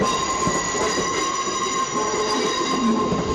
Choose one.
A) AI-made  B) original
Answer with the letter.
B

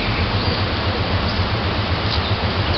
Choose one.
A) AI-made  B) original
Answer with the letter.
B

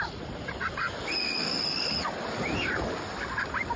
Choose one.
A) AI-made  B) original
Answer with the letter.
B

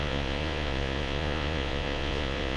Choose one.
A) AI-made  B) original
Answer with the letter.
A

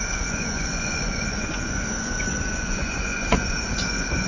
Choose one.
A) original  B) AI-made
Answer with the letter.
B